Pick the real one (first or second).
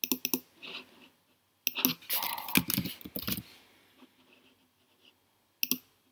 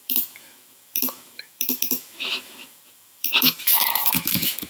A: first